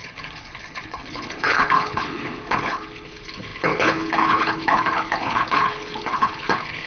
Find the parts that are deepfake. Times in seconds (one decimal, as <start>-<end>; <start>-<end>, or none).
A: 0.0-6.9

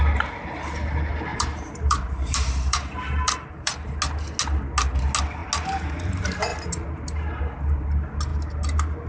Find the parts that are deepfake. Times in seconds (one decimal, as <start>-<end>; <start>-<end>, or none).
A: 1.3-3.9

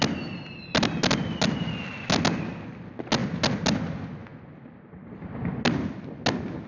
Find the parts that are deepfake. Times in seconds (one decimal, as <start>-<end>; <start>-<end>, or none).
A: none

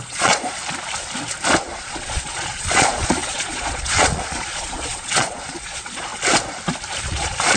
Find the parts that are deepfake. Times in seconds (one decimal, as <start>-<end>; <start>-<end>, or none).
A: 0.0-0.6; 1.7-6.1; 7.0-7.6

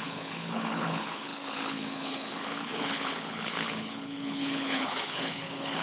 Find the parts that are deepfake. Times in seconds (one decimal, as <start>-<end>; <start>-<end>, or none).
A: 0.0-5.8

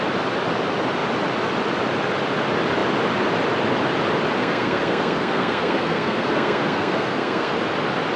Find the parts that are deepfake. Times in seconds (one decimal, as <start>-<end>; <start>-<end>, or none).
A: 4.4-7.5

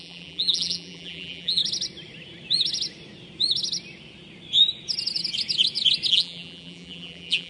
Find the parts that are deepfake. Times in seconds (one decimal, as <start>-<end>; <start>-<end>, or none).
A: 0.0-1.6; 6.1-7.5